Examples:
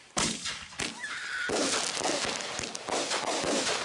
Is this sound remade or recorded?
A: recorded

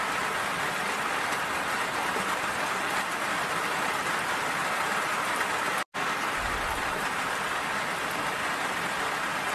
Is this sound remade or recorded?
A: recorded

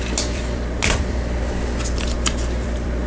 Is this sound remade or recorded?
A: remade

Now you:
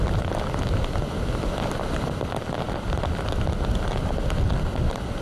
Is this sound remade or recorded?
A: recorded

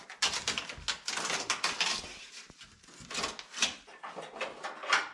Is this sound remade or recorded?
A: recorded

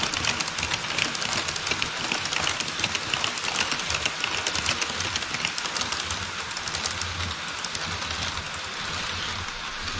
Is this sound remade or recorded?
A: recorded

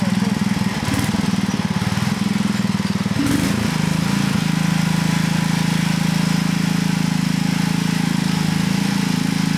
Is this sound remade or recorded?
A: recorded